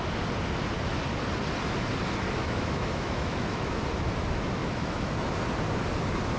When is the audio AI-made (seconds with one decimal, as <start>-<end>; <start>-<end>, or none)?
2.4-3.8; 4.6-5.3